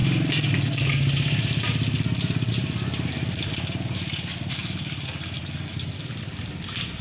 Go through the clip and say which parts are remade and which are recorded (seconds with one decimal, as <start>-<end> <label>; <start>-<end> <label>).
0.0-7.0 recorded